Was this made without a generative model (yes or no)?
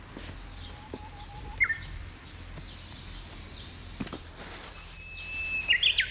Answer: yes